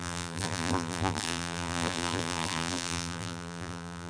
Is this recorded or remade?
remade